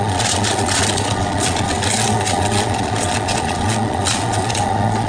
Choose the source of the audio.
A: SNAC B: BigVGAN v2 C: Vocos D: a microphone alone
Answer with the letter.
C